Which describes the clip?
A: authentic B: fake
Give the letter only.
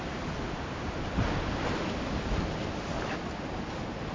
A